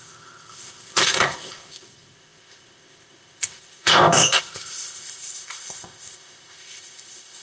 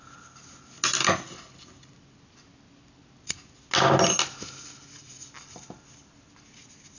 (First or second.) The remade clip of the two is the first